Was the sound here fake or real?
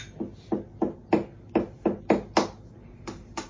real